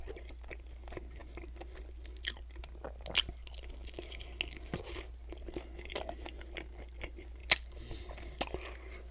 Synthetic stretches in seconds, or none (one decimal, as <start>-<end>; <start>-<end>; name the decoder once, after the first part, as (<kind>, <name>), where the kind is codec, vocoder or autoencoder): none